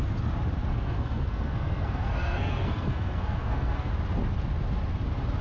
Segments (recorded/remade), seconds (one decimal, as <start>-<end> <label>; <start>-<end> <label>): 0.0-0.7 recorded; 0.7-3.9 remade; 3.9-5.4 recorded